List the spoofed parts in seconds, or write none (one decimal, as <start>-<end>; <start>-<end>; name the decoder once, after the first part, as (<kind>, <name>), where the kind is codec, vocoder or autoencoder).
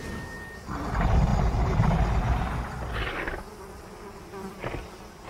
none